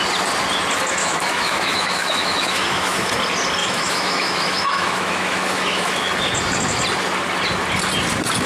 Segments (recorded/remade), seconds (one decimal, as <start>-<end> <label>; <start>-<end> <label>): 0.0-1.0 recorded; 1.0-3.1 remade; 3.1-3.6 recorded; 3.6-6.1 remade; 6.1-8.5 recorded